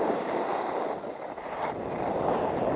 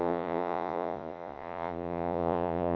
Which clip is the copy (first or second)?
second